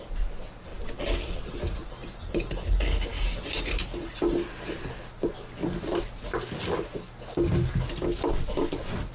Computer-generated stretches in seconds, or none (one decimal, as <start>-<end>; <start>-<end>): none